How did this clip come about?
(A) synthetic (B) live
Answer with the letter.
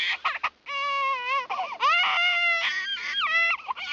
B